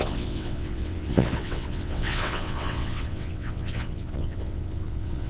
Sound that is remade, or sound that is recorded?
remade